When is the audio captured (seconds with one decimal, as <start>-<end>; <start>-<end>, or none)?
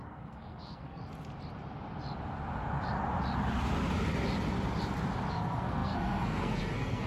1.0-5.3